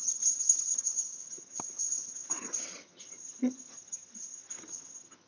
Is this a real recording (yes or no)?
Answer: no